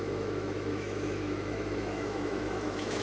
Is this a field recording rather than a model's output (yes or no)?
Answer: no